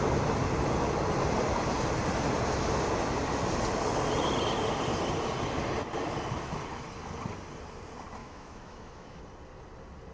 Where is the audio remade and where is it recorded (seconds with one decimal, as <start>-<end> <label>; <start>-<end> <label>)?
0.0-8.2 recorded; 8.2-9.2 remade; 9.2-10.1 recorded